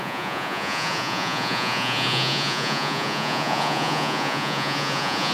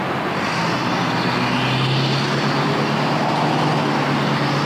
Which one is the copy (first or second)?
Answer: first